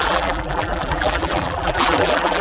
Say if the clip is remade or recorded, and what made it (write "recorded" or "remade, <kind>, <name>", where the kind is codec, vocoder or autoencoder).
remade, vocoder, BigVGAN v2